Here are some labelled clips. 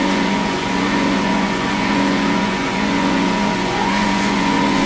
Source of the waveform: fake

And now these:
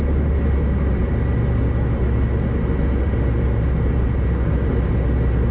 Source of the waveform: real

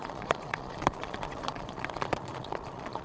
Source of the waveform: fake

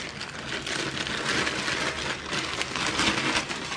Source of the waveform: real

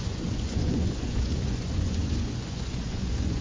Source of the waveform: fake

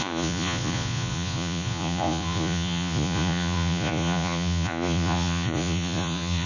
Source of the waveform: fake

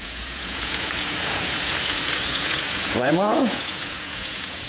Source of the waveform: fake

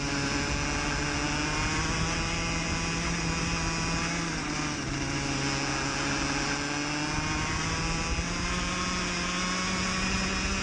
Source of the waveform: real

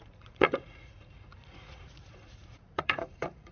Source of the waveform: fake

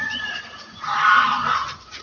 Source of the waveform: fake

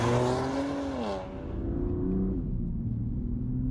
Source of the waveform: real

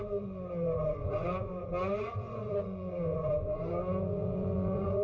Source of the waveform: fake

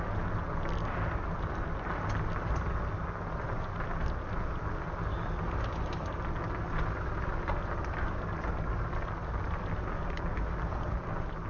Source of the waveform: real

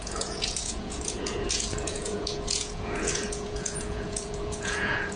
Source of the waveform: fake